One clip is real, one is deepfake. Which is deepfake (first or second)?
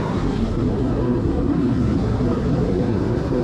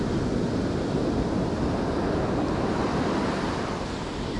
first